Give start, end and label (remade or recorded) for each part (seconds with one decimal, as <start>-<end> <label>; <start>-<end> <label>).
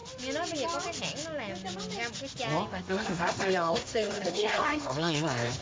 0.0-2.7 recorded; 2.7-5.6 remade